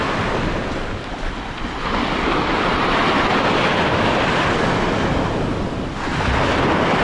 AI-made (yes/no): no